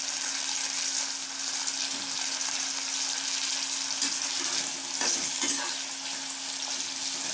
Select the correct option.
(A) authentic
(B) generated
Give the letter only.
A